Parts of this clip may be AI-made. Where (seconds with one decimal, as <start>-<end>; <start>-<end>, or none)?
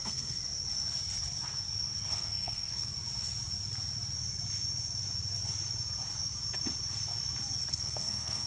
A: 0.0-0.4; 2.1-2.9; 7.7-8.5